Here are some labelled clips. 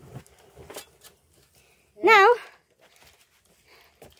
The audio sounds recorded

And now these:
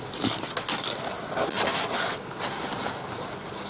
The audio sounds recorded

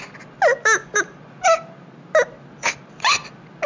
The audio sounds recorded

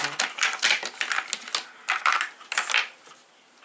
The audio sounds recorded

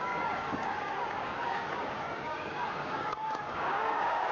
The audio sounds remade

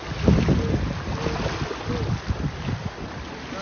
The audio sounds recorded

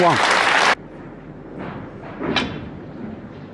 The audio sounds recorded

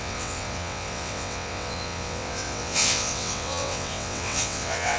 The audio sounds remade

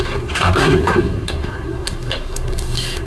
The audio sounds remade